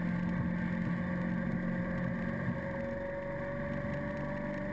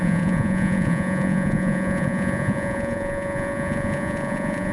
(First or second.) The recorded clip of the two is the first